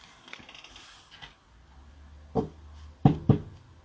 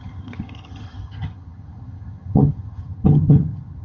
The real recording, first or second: first